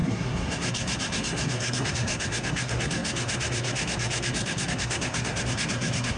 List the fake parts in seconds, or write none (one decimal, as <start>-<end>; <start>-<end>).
0.0-6.2